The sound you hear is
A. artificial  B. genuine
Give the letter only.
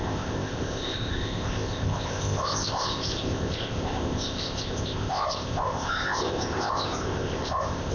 A